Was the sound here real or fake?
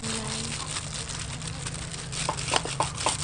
real